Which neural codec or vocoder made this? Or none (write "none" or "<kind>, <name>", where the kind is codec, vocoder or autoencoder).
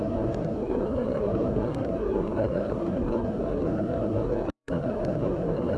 codec, SNAC